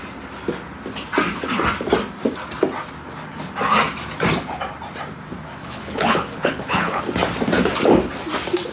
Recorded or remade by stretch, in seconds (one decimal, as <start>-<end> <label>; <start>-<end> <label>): 0.0-5.6 recorded; 5.6-7.0 remade; 7.0-8.7 recorded